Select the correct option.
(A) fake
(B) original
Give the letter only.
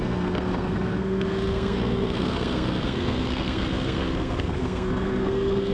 A